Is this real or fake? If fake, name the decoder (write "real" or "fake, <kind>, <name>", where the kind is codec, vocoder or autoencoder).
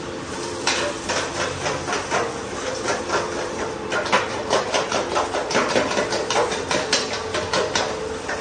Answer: fake, vocoder, BigVGAN v2